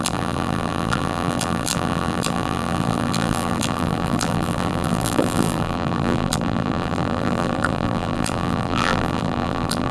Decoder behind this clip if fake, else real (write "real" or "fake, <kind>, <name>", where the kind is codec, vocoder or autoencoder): fake, vocoder, BigVGAN v2